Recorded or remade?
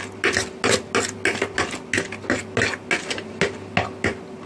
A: recorded